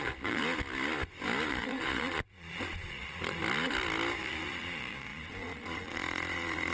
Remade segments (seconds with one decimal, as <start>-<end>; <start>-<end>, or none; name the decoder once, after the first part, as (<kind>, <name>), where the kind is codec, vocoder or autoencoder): 0.0-0.4 (vocoder, Vocos); 1.5-3.4; 4.2-6.7